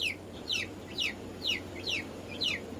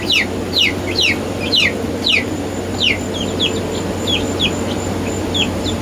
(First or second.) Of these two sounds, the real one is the second